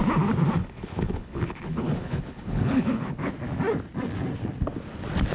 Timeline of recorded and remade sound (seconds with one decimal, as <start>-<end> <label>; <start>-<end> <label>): 0.0-0.6 recorded; 0.6-3.3 remade; 3.3-5.3 recorded